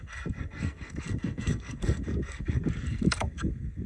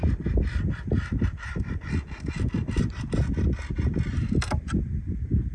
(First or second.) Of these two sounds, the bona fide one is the second